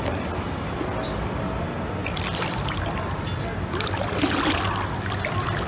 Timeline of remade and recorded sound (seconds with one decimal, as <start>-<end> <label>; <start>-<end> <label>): 0.0-5.7 recorded